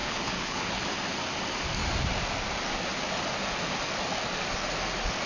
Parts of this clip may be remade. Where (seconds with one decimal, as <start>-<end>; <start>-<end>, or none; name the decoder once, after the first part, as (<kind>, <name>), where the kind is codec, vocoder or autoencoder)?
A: 0.0-0.8 (codec, HILCodec)